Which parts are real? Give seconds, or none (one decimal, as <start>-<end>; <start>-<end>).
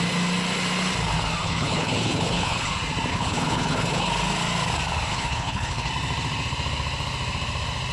0.0-1.4; 2.7-3.1; 4.1-5.1; 5.9-7.9